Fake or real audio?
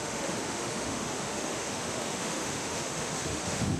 fake